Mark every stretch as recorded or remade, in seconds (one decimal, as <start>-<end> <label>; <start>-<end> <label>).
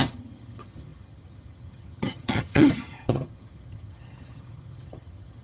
0.0-5.4 remade